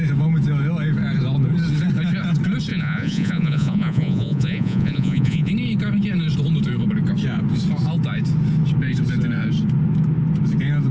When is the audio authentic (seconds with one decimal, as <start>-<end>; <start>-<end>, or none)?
0.0-2.7; 5.5-10.9